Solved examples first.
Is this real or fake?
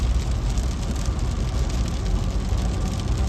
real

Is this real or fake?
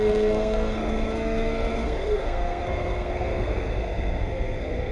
fake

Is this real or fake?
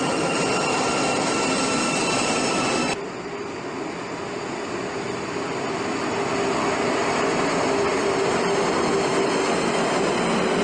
real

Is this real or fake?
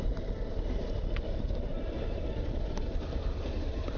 fake